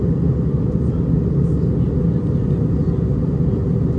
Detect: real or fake real